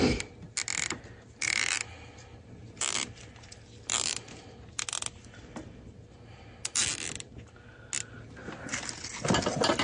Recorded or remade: recorded